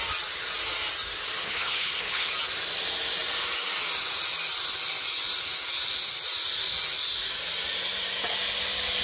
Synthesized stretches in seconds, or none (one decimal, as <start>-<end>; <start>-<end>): 1.4-2.3